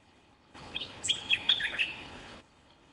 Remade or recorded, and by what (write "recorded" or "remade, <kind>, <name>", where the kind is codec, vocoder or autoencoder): remade, codec, HILCodec